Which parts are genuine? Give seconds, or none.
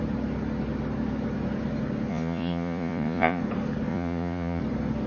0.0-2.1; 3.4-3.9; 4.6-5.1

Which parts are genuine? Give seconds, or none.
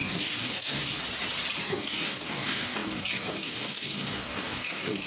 1.0-1.6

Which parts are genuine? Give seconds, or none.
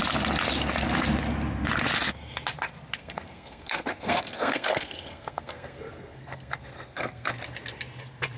0.0-3.0; 7.3-8.4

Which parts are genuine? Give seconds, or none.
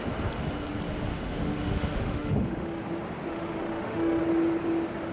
0.0-1.1; 2.8-3.3; 4.2-5.1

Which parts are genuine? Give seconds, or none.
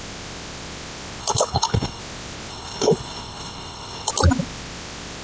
0.0-1.2; 2.0-2.5; 4.1-5.2